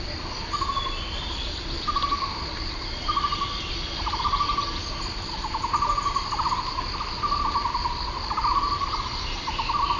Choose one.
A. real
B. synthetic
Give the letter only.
A